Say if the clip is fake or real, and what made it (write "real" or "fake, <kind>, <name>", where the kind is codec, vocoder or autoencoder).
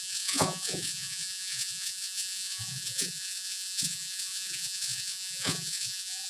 fake, vocoder, Vocos